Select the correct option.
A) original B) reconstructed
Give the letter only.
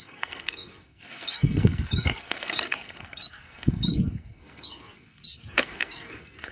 B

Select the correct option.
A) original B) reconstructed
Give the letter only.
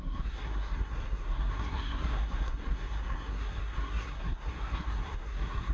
B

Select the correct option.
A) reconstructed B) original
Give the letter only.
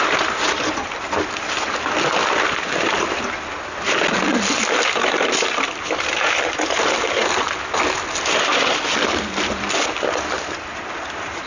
B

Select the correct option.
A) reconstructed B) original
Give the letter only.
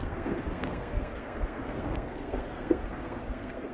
A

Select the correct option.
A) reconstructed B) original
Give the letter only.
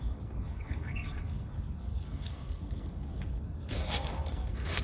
A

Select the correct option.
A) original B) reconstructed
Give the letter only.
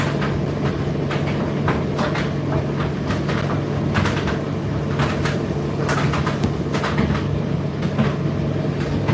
A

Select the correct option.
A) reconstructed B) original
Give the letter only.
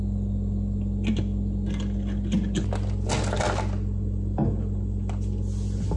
B